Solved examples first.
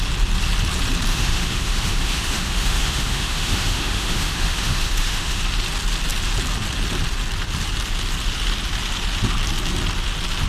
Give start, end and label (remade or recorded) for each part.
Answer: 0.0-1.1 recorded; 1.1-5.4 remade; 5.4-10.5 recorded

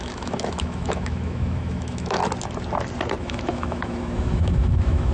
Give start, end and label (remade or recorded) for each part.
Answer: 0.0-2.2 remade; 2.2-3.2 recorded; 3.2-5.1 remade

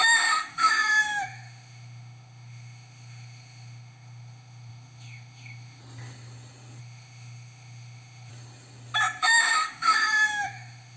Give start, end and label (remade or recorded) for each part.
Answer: 0.0-5.8 remade; 5.8-6.8 recorded; 6.8-8.3 remade; 8.3-9.2 recorded; 9.2-11.0 remade

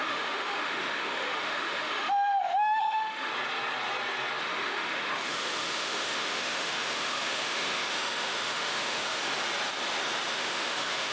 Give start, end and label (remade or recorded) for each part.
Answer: 0.0-3.3 remade; 3.3-4.4 recorded; 4.4-9.2 remade; 9.2-10.3 recorded; 10.3-11.1 remade